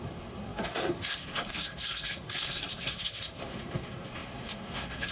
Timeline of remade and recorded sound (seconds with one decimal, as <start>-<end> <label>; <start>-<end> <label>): 0.0-5.1 remade